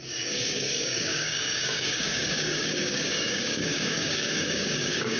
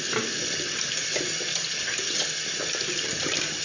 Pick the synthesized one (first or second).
first